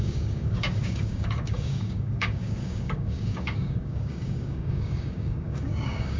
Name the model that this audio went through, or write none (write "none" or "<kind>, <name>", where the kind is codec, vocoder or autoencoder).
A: codec, DAC